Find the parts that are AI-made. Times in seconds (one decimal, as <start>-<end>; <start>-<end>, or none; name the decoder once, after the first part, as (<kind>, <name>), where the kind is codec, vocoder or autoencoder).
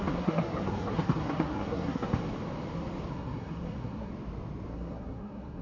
0.0-2.2 (codec, SNAC); 3.1-4.1; 4.7-5.6